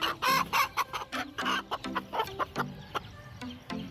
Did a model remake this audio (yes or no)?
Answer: yes